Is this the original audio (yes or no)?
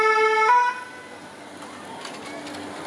yes